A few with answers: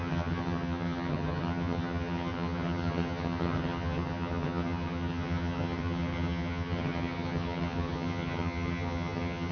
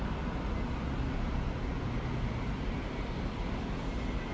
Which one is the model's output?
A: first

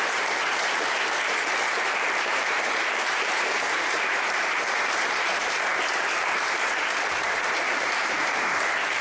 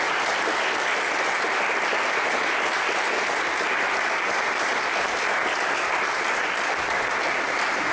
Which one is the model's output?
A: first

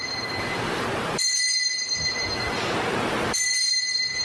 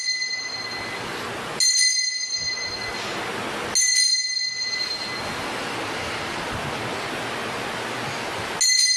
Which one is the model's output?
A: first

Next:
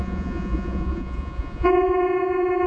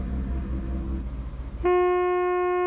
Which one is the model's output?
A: first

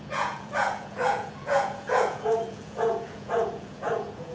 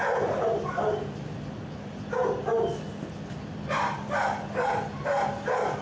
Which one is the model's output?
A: first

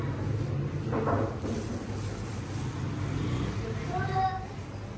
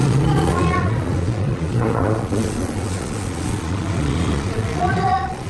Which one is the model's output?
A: second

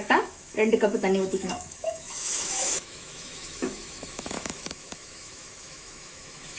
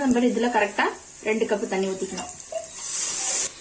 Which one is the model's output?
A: first